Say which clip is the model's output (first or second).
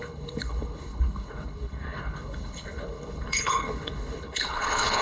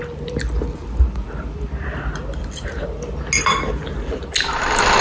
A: first